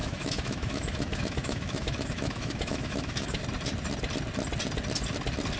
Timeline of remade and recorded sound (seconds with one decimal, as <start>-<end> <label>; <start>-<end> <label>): 0.0-3.4 remade; 3.4-5.6 recorded

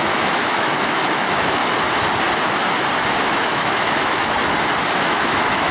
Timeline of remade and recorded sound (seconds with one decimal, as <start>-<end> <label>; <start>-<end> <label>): 0.0-1.6 remade; 1.6-3.2 recorded; 3.2-4.4 remade; 4.4-4.9 recorded; 4.9-5.7 remade

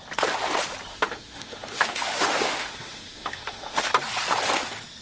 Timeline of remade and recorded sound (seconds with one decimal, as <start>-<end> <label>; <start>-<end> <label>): 0.0-0.9 recorded; 0.9-3.9 remade; 3.9-5.0 recorded